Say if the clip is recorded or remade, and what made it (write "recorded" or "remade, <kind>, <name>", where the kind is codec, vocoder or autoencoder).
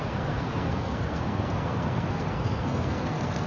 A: remade, codec, SNAC